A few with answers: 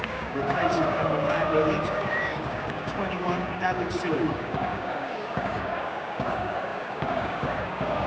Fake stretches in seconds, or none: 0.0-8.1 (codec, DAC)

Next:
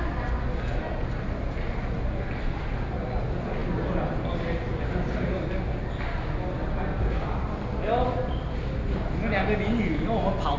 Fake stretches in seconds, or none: none

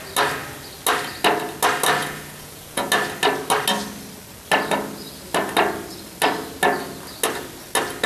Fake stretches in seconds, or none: 2.0-2.9 (vocoder, Vocos)

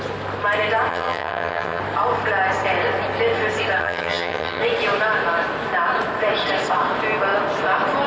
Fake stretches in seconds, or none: 0.9-1.8 (vocoder, HiFi-GAN); 3.8-4.6

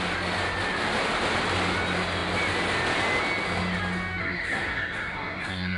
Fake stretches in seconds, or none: 4.2-5.8 (codec, SNAC)

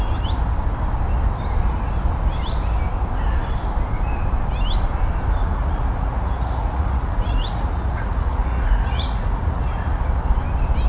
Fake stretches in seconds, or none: 5.4-10.1 (vocoder, Vocos)